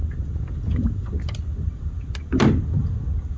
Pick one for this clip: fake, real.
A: real